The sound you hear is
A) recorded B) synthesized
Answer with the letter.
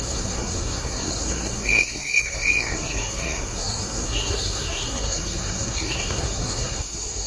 B